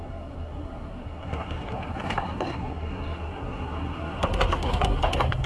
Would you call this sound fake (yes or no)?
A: yes